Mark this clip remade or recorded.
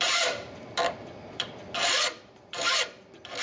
remade